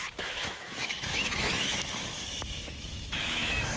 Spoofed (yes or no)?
yes